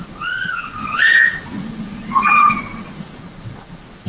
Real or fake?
fake